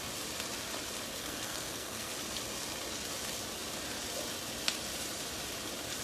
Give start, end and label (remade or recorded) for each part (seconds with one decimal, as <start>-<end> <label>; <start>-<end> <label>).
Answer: 0.0-1.1 recorded; 1.1-2.1 remade; 2.1-6.0 recorded